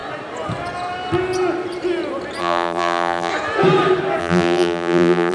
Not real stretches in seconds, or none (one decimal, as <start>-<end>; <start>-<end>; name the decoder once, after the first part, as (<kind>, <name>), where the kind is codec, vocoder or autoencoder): 2.4-3.3 (vocoder, BigVGAN v2); 4.2-5.3